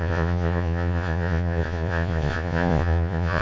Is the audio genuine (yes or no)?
no